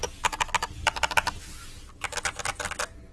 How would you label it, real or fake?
real